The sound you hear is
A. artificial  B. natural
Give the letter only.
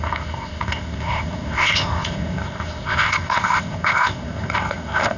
A